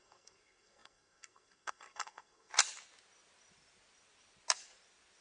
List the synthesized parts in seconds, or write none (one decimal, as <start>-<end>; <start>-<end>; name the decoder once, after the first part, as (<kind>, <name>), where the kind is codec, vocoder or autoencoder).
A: 0.0-2.5 (codec, SNAC)